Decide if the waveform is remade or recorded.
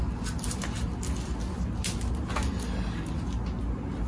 recorded